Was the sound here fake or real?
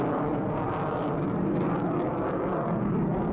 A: real